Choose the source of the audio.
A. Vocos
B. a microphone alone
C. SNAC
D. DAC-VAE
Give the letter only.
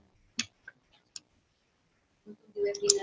B